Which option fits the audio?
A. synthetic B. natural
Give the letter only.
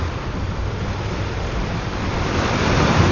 B